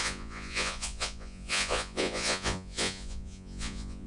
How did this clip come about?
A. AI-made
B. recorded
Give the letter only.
A